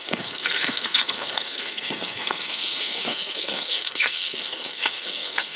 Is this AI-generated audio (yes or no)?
yes